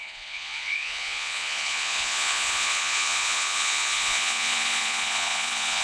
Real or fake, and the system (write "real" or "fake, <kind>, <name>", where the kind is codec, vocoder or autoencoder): fake, vocoder, Vocos